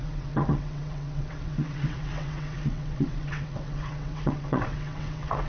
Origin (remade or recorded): remade